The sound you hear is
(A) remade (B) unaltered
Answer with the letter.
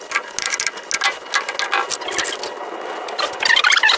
B